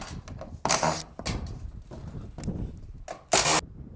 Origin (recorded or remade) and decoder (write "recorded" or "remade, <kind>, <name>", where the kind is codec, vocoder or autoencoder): recorded